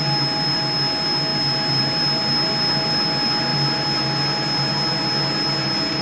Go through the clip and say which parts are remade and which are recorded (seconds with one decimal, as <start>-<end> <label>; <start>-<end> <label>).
0.0-6.0 recorded